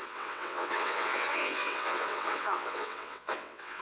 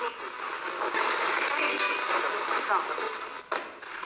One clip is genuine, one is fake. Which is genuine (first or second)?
second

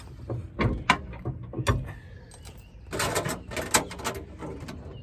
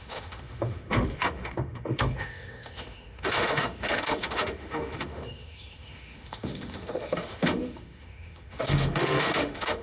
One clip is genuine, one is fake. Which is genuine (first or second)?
first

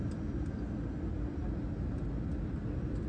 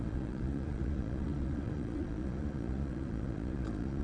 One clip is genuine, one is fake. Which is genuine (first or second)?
first